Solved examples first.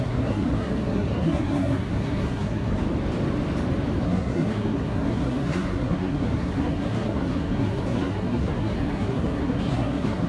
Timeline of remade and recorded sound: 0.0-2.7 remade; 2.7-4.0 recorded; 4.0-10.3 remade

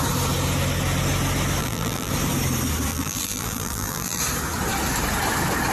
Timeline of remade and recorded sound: 0.0-1.6 recorded; 1.6-2.1 remade; 2.1-2.9 recorded; 2.9-4.2 remade; 4.2-5.7 recorded

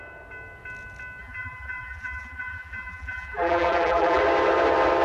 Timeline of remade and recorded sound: 0.0-1.2 recorded; 1.2-4.2 remade; 4.2-5.0 recorded

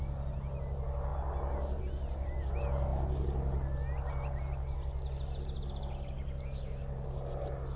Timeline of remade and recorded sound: 0.0-7.8 recorded

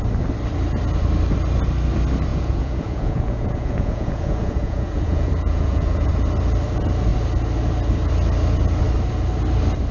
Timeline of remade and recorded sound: 0.0-2.3 recorded; 2.3-6.1 remade; 6.1-9.9 recorded

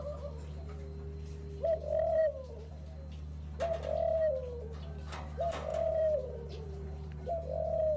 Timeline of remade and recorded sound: 0.0-5.7 recorded; 5.7-7.3 remade; 7.3-8.0 recorded

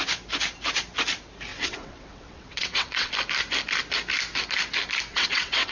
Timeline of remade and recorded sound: 0.0-1.5 recorded; 1.5-3.1 remade; 3.1-5.1 recorded; 5.1-5.7 remade